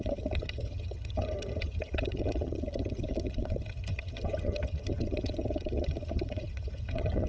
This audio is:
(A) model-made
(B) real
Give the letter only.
A